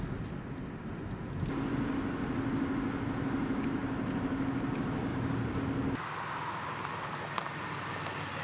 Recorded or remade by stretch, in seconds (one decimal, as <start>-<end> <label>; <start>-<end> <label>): 0.0-3.8 recorded; 3.8-4.4 remade; 4.4-5.1 recorded; 5.1-5.6 remade; 5.6-8.4 recorded